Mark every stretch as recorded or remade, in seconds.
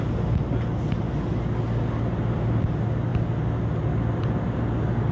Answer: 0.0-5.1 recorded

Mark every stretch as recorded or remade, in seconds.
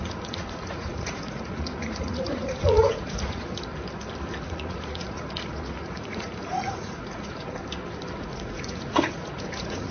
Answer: 0.0-3.7 remade; 3.7-4.4 recorded; 4.4-7.6 remade; 7.6-8.2 recorded; 8.2-9.9 remade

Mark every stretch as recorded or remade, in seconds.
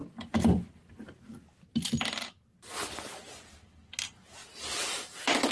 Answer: 0.0-5.5 recorded